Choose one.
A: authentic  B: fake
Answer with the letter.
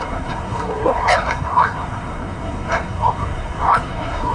B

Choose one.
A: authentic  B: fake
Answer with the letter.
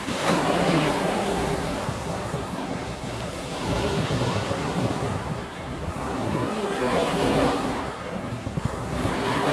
B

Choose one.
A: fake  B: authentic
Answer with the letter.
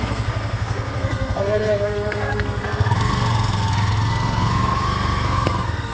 A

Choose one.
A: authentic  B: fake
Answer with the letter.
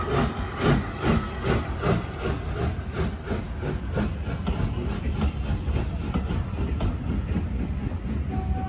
A